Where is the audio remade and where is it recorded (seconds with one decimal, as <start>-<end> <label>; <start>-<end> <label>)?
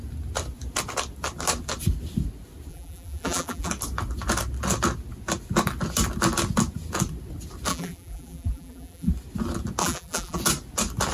0.0-2.7 recorded; 2.7-3.7 remade; 3.7-7.7 recorded; 7.7-9.1 remade; 9.1-9.8 recorded; 9.8-10.4 remade; 10.4-11.1 recorded